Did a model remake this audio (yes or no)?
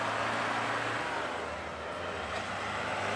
no